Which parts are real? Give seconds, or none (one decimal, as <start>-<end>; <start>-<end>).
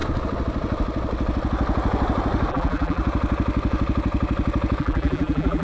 0.0-2.5; 3.0-4.8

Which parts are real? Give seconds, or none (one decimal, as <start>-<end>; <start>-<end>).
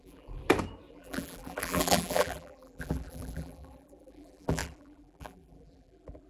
0.4-0.9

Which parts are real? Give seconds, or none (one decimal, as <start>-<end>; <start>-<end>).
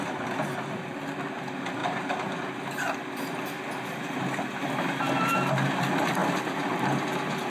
1.8-5.7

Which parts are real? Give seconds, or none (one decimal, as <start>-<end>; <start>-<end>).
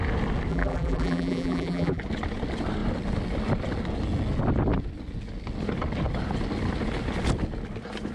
0.0-0.5; 2.0-8.1